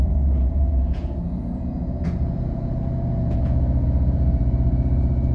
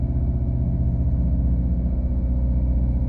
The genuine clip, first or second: second